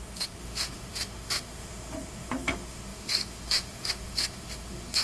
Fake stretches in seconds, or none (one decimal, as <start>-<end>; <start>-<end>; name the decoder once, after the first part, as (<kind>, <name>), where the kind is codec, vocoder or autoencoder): 0.0-5.0 (autoencoder, DAC-VAE)